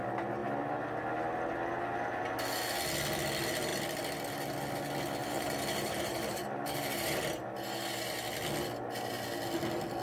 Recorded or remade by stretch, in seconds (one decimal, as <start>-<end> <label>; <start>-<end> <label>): 0.0-5.2 recorded; 5.2-7.2 remade; 7.2-10.0 recorded